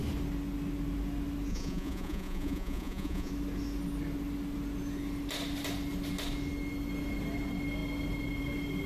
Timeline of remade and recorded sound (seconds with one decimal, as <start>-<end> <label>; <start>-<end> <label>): 0.0-1.5 recorded; 1.5-3.3 remade; 3.3-8.9 recorded